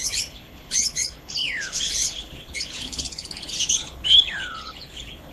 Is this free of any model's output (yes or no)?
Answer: no